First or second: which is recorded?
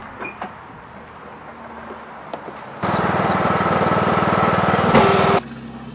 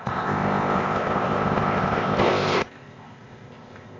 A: first